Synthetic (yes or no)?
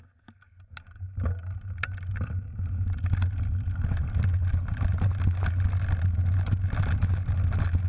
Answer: no